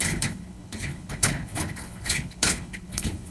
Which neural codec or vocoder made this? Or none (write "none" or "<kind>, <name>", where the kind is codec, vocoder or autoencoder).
codec, HILCodec